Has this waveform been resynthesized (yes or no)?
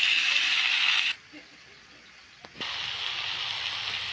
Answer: no